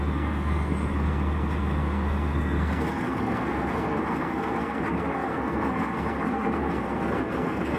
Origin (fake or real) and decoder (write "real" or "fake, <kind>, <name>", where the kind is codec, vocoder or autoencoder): fake, codec, SNAC